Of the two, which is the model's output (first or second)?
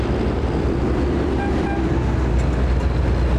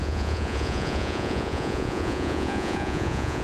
second